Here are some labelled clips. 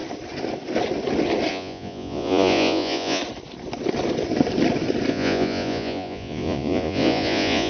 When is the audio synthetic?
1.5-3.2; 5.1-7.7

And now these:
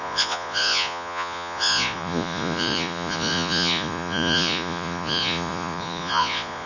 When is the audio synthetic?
0.0-6.7

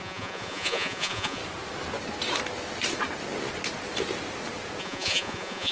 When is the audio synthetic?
0.0-1.4; 4.8-5.7

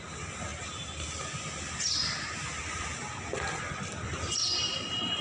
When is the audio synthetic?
none

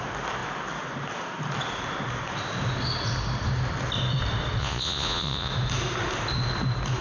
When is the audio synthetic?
4.6-5.5